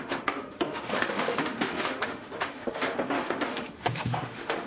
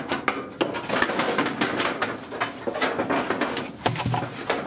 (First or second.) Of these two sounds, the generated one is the first